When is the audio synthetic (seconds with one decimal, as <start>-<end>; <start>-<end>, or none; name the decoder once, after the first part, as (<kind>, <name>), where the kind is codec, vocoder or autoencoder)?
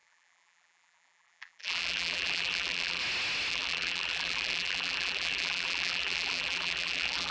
0.0-3.0 (vocoder, BigVGAN v2); 3.5-7.3